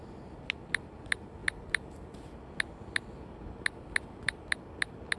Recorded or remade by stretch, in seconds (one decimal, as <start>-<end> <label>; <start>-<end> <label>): 0.0-5.2 recorded